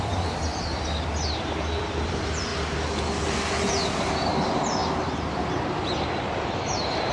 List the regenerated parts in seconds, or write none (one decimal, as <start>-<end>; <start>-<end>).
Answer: 0.0-2.5; 4.1-4.8; 5.3-7.1